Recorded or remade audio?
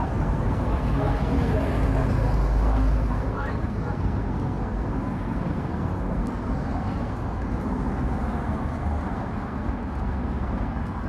remade